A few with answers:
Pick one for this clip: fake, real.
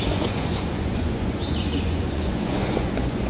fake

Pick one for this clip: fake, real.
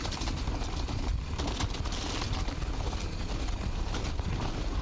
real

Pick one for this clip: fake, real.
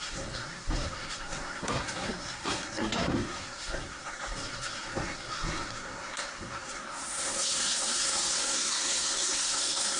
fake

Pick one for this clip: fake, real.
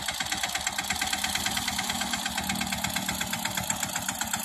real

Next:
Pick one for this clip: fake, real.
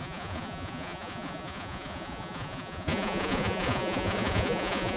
fake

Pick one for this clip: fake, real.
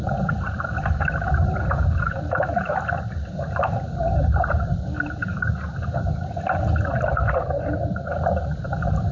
fake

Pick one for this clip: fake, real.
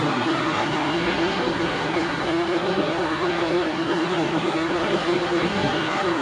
fake